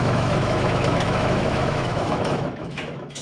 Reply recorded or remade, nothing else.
remade